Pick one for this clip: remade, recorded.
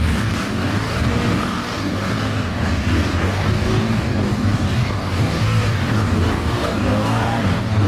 remade